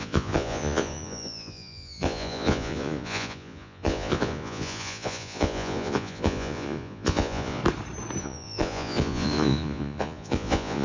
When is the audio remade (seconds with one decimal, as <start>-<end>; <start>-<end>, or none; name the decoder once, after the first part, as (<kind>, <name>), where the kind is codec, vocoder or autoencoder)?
0.0-7.6 (vocoder, Vocos); 8.2-10.8

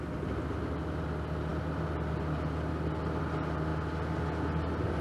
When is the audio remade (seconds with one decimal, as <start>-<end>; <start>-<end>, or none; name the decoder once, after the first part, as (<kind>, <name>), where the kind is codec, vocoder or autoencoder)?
none

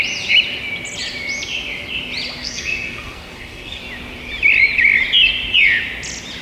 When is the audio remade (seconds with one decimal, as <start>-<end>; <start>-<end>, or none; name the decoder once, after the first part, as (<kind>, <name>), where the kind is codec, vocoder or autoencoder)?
2.4-3.8 (codec, SNAC)